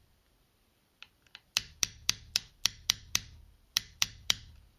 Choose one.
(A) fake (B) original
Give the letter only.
A